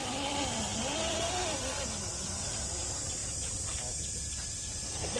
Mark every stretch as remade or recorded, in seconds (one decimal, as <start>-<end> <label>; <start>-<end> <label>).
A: 0.0-5.2 recorded